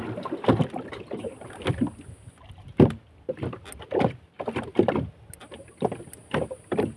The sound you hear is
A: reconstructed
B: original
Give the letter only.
B